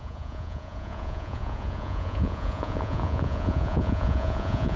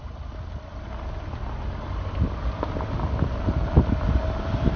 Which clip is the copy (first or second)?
first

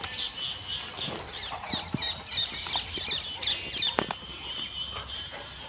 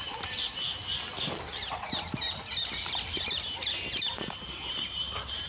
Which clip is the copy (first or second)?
second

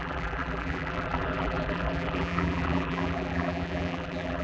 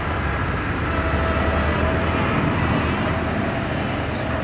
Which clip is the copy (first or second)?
first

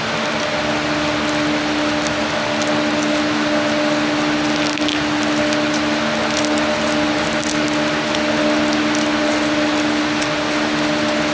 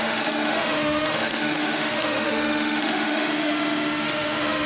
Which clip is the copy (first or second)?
second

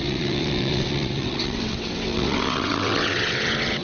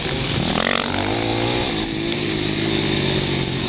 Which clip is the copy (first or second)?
first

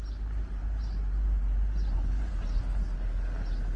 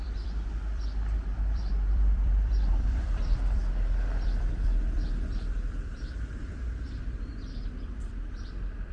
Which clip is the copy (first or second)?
second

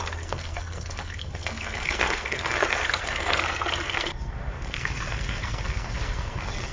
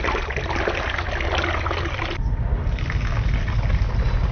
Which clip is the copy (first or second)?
first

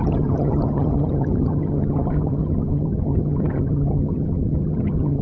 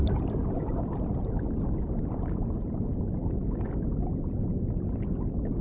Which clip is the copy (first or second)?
first